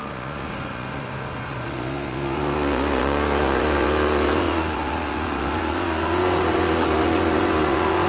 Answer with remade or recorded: remade